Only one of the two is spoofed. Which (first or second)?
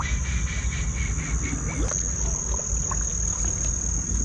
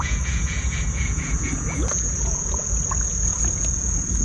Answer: second